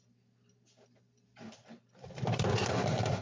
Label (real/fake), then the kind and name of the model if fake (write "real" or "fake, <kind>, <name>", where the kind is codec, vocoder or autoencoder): fake, vocoder, BigVGAN v2